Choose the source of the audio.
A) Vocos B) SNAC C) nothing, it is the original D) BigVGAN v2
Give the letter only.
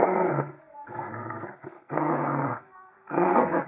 B